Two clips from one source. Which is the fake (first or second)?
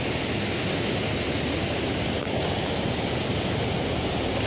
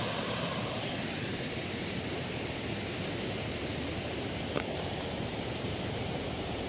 second